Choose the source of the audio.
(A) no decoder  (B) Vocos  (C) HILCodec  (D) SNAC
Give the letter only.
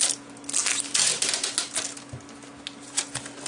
A